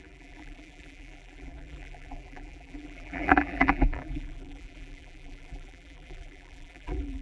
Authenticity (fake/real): fake